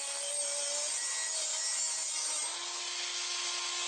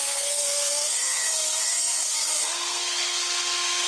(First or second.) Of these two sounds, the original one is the first